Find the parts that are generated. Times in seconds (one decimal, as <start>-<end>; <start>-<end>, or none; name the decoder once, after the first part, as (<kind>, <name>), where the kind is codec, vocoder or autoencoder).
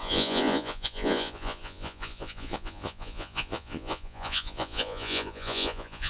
0.0-6.1 (vocoder, Vocos)